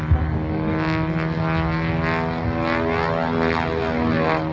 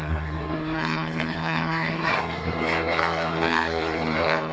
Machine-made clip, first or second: second